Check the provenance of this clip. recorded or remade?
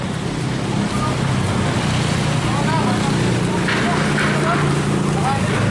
recorded